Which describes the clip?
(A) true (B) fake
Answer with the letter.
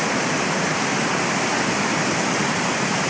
A